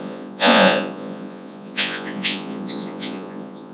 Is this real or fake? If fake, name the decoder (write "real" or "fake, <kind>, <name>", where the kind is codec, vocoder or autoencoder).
fake, vocoder, Vocos